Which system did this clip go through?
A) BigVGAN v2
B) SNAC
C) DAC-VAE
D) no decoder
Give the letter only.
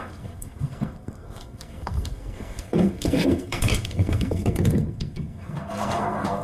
B